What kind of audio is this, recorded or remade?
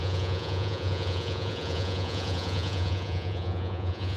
remade